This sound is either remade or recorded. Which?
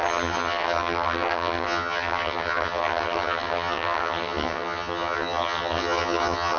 remade